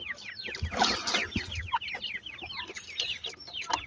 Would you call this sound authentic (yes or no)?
yes